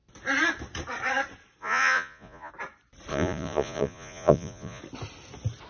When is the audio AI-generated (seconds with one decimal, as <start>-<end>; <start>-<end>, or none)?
1.6-2.5; 3.1-4.8